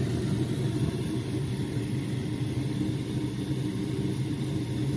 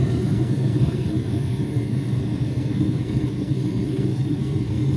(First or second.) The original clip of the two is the first